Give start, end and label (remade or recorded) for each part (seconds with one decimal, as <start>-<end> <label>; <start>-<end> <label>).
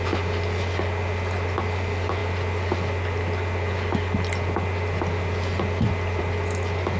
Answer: 0.0-7.0 recorded